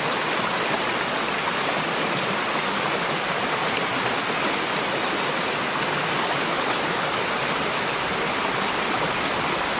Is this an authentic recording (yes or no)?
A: yes